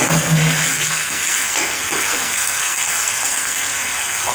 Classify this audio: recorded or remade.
remade